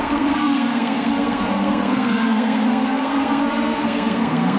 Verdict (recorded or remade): remade